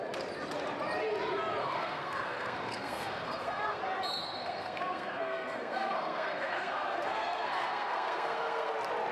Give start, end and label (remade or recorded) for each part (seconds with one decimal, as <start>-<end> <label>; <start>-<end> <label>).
0.0-1.6 recorded; 1.6-3.8 remade; 3.8-4.2 recorded; 4.2-8.7 remade; 8.7-9.1 recorded